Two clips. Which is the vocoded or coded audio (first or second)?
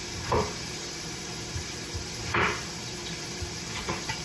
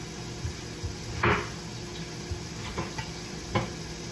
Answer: first